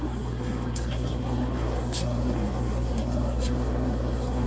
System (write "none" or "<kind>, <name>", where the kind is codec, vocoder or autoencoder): codec, SNAC